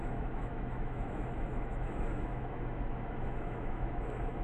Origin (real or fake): fake